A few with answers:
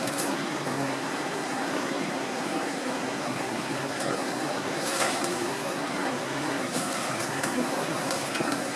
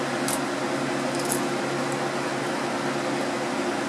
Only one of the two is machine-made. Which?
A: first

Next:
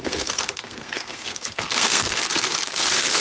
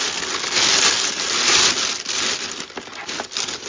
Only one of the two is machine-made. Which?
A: first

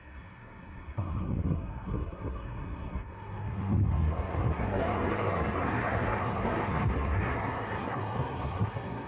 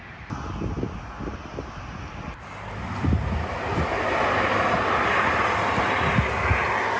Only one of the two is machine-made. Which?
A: first